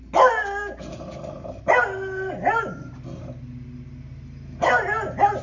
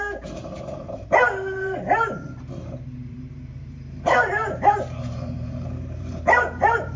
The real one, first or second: first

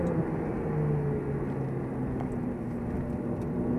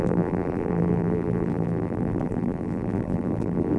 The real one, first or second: first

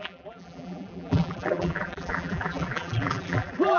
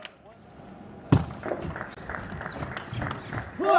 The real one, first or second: second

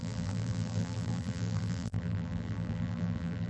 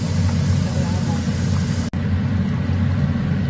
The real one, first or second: second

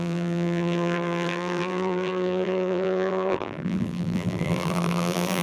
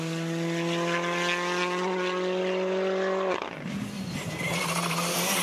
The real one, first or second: second